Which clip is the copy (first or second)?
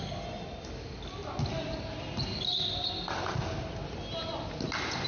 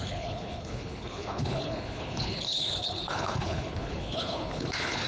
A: second